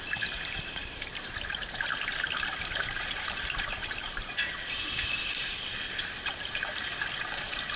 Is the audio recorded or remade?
remade